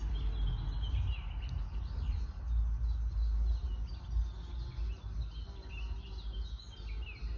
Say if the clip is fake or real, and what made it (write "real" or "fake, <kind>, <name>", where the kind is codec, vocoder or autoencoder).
real